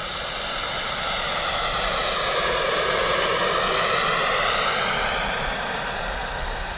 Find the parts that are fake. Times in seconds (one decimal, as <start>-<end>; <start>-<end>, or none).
none